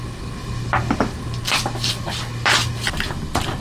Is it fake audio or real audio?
real